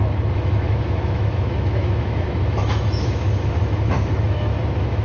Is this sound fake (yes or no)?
yes